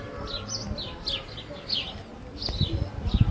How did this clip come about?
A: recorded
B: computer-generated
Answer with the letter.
A